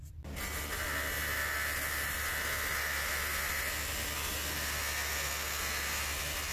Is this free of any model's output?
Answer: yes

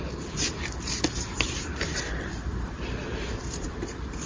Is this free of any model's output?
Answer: no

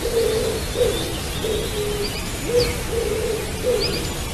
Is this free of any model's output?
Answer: yes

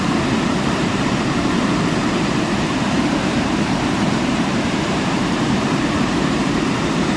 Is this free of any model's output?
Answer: no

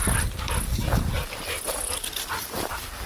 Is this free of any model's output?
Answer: yes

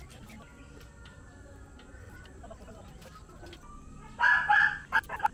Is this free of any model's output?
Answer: yes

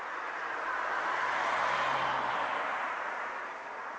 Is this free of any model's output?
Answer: yes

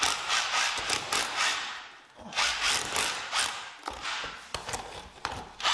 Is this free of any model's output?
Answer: yes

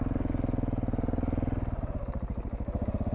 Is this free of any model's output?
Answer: yes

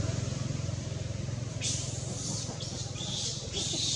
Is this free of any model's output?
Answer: no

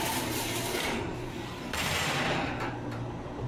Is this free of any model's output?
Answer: no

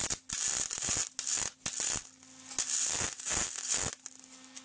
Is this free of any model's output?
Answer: yes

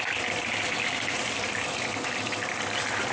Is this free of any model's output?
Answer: no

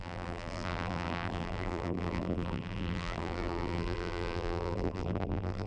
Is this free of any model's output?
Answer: no